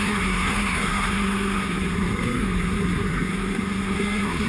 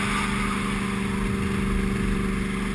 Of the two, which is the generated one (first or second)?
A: first